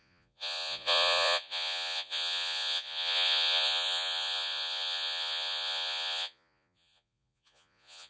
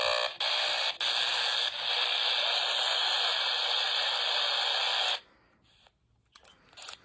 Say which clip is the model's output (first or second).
first